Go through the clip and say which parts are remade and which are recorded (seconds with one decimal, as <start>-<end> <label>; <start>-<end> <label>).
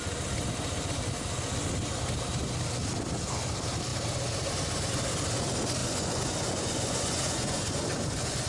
0.0-5.8 recorded; 5.8-8.5 remade